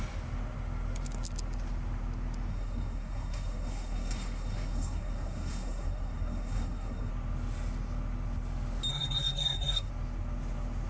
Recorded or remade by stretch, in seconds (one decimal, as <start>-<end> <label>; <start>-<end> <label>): 0.0-2.5 recorded; 2.5-7.1 remade; 7.1-8.9 recorded; 8.9-9.9 remade; 9.9-10.9 recorded